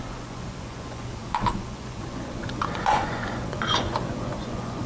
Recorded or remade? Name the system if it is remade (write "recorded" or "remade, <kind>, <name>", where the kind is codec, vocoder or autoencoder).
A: remade, vocoder, Vocos